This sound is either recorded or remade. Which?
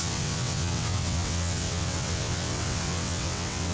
remade